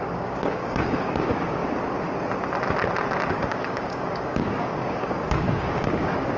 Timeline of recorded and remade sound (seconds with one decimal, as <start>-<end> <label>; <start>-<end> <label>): 0.0-1.6 remade; 1.6-3.3 recorded; 3.3-6.4 remade